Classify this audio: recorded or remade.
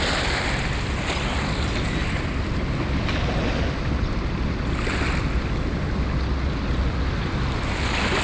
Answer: recorded